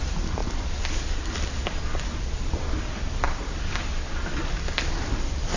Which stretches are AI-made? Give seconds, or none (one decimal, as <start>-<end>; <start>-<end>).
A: none